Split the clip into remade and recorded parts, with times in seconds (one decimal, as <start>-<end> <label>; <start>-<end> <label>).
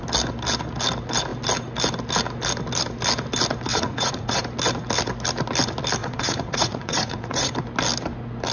0.0-3.7 recorded; 3.7-4.4 remade; 4.4-6.0 recorded; 6.0-7.5 remade; 7.5-8.5 recorded